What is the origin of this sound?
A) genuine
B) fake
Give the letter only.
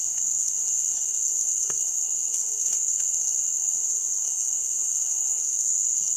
B